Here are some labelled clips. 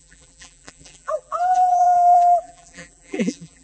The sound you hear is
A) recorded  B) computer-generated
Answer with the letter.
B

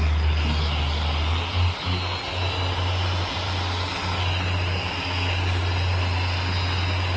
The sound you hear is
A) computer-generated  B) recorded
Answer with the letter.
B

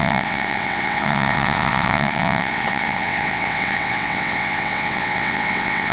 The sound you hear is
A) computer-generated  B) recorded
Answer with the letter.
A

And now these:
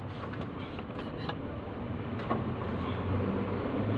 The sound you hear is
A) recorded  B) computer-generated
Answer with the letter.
A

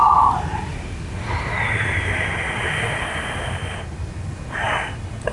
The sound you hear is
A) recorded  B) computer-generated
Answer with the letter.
A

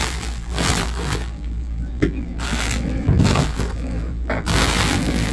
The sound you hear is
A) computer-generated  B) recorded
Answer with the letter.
A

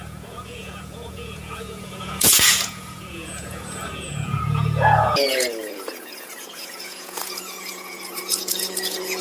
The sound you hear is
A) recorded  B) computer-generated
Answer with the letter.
B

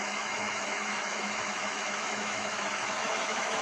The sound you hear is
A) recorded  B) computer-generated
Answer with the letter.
B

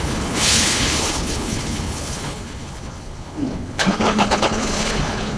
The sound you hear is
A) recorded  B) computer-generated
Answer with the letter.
B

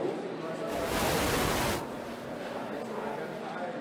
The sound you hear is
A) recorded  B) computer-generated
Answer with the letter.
A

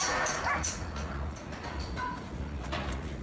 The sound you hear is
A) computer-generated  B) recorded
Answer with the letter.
A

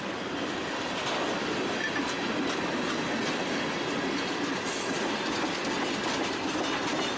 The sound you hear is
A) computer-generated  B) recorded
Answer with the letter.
B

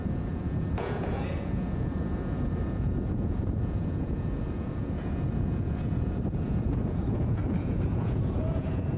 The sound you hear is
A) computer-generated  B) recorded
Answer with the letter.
A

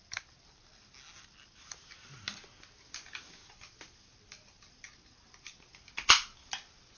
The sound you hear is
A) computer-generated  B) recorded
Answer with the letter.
B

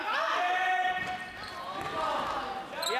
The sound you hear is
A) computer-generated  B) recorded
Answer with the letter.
B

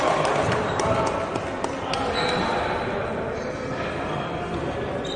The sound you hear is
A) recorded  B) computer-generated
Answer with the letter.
A